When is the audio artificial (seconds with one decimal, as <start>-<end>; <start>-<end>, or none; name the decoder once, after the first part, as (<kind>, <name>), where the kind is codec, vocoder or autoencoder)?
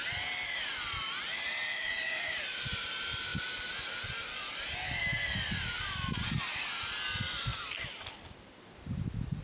none